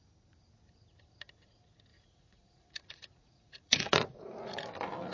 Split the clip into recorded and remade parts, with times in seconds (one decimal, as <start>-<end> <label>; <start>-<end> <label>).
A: 0.0-1.9 recorded; 1.9-4.6 remade; 4.6-5.1 recorded